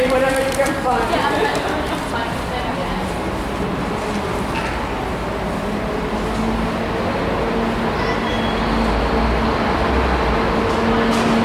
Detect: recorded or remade recorded